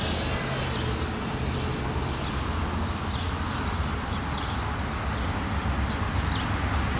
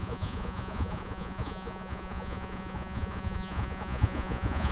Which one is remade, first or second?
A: second